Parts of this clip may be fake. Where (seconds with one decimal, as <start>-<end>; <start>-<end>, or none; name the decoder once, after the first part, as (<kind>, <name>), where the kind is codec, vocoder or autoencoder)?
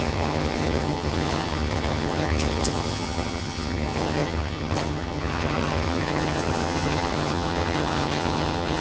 0.0-8.8 (vocoder, HiFi-GAN)